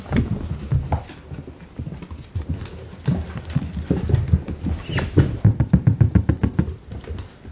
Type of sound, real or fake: real